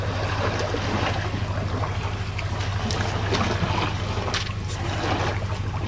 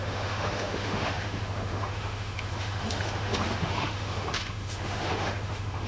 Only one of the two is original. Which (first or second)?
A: first